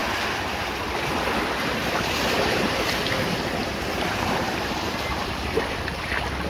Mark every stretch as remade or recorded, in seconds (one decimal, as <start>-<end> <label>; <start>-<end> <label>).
0.0-1.8 recorded; 1.8-3.0 remade; 3.0-3.6 recorded; 3.6-6.1 remade; 6.1-6.5 recorded